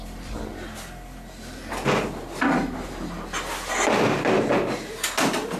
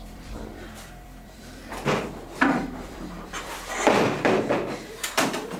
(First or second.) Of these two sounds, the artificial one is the second